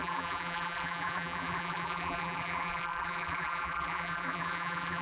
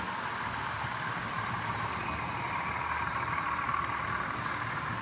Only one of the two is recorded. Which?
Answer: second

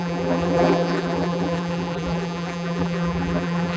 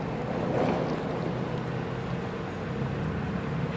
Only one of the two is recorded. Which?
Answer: second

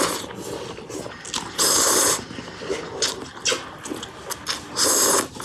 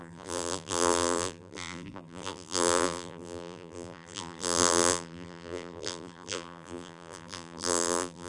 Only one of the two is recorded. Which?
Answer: first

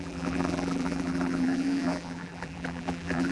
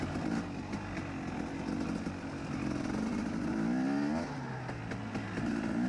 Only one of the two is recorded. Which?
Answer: second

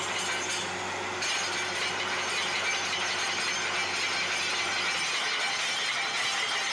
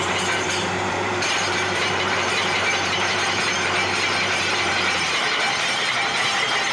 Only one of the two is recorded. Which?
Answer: first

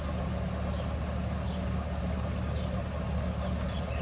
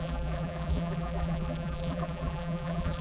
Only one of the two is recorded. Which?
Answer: first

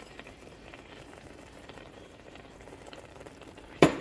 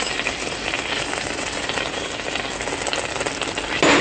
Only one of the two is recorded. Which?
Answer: second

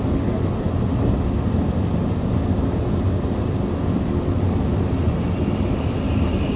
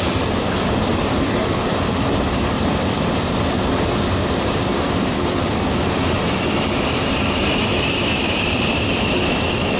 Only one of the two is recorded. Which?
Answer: first